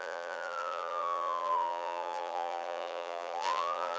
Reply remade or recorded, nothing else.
remade